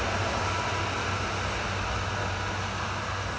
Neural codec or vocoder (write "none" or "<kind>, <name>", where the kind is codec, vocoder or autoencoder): none